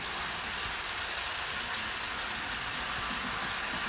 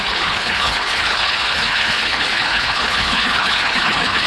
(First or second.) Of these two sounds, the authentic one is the first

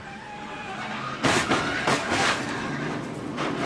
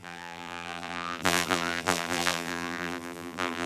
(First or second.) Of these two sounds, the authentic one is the first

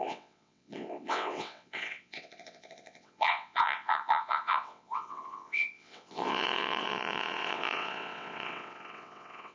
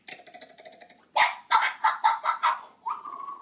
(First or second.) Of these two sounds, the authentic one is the second